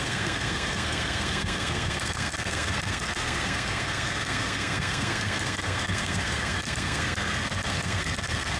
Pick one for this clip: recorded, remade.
remade